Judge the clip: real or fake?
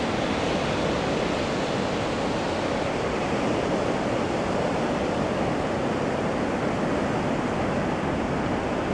real